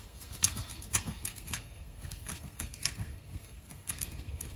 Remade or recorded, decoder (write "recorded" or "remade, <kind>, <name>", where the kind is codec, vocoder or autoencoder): remade, codec, SNAC